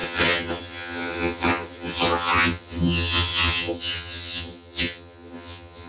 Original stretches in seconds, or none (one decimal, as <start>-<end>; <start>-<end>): none